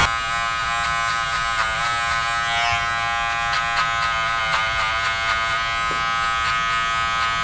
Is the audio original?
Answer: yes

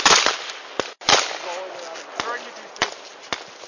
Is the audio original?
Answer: yes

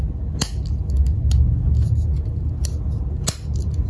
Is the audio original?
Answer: yes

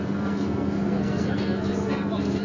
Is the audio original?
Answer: no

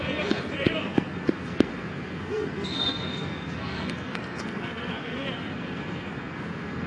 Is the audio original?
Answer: no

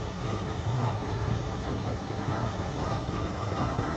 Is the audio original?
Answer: no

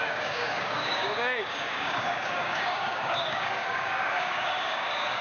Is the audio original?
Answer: no